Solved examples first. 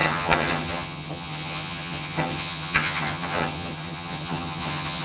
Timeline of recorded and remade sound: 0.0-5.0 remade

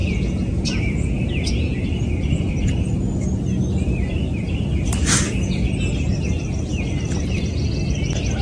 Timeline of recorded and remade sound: 0.0-1.5 remade; 1.5-8.4 recorded

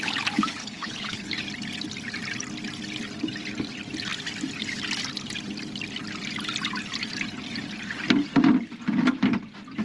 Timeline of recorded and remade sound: 0.0-0.6 recorded; 0.6-1.3 remade; 1.3-9.8 recorded